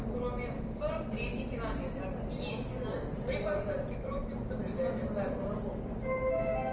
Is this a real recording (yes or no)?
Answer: yes